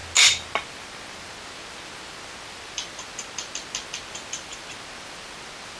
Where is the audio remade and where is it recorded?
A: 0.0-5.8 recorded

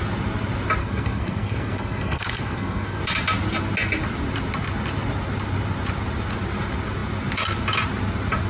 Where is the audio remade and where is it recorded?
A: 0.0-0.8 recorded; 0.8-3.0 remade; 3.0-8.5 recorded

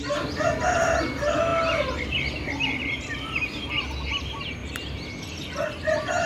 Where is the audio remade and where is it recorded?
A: 0.0-6.3 recorded

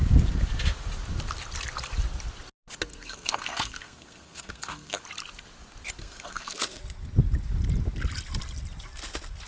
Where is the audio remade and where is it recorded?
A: 0.0-2.9 recorded; 2.9-5.0 remade; 5.0-6.0 recorded; 6.0-6.8 remade; 6.8-9.5 recorded

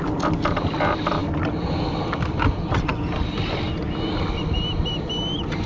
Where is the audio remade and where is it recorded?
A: 0.0-5.7 recorded

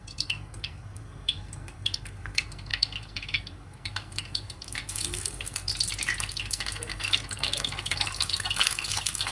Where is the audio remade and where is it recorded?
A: 0.0-5.7 remade; 5.7-6.2 recorded; 6.2-9.3 remade

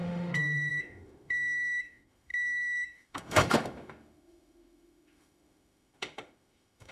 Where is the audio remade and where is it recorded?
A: 0.0-6.9 remade

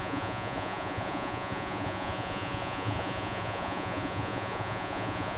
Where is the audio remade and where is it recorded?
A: 0.0-5.4 remade